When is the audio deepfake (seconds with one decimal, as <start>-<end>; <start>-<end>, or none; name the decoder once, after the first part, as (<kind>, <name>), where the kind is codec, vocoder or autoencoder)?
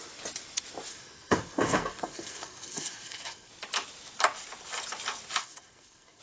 0.9-3.5 (codec, SNAC); 5.4-6.2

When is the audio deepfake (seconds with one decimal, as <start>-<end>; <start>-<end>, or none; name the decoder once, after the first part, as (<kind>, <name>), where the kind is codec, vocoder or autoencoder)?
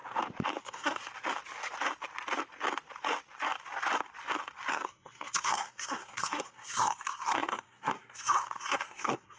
0.6-1.0 (codec, SNAC); 4.7-9.4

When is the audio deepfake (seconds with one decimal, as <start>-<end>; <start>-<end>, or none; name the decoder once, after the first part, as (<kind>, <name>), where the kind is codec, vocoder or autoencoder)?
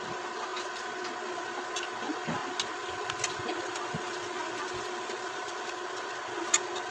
none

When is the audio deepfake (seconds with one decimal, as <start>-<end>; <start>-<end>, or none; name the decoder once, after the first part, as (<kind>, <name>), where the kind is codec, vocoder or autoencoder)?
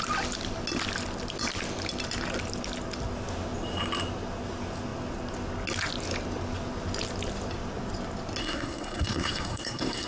8.4-10.1 (codec, SNAC)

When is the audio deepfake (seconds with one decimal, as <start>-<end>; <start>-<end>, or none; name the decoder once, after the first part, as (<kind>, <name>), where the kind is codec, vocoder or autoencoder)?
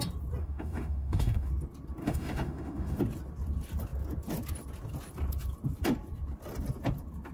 0.4-1.5 (autoencoder, DAC-VAE); 2.0-3.0